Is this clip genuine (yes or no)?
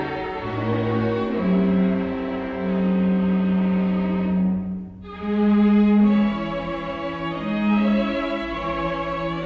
yes